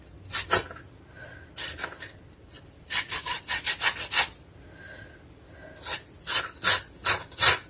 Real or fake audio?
real